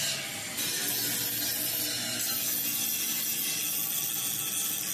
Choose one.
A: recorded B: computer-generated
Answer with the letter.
A